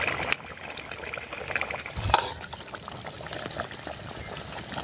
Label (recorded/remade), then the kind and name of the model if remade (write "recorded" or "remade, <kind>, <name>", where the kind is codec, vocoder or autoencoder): recorded